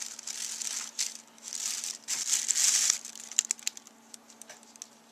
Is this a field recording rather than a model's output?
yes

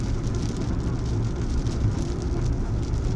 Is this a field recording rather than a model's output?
yes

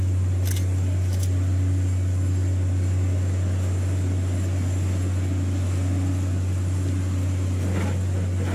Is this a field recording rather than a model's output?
yes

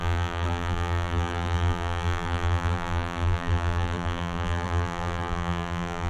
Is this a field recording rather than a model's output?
no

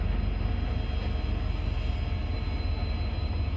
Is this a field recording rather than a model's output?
yes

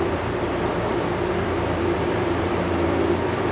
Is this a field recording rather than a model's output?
no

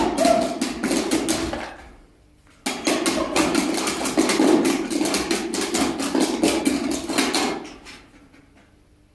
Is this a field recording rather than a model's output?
yes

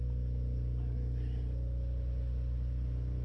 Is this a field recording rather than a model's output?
yes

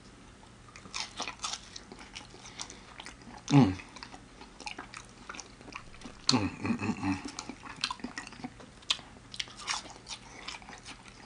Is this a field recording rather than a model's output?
yes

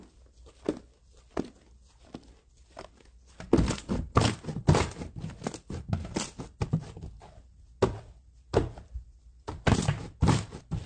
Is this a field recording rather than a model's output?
yes